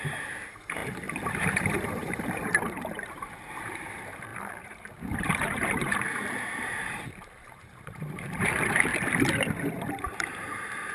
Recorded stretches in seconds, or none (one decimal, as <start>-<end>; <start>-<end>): 8.9-9.7